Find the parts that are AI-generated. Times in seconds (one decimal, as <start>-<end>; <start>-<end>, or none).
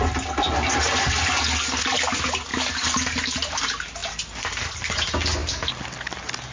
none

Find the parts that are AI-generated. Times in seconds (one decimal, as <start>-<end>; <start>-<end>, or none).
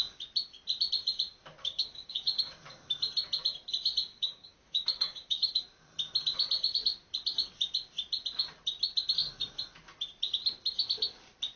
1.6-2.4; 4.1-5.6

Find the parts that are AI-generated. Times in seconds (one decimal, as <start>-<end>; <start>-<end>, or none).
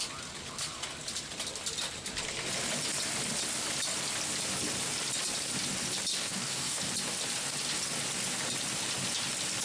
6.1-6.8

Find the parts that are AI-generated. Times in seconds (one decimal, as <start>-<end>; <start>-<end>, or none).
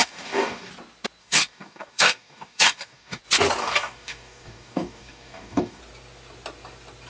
0.0-0.7; 1.2-3.2; 3.6-5.8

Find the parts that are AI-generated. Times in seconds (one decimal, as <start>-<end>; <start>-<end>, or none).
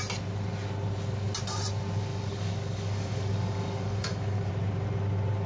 2.1-4.5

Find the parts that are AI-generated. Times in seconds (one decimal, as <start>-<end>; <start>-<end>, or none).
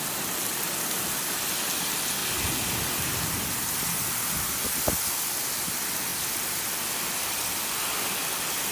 none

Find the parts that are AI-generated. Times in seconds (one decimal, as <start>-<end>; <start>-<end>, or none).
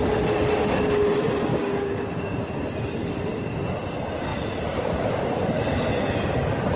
1.5-2.4